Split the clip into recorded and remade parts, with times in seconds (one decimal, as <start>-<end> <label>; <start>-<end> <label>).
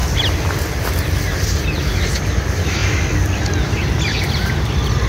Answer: 0.0-5.1 recorded